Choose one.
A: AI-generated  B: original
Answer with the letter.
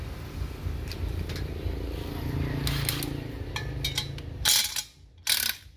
B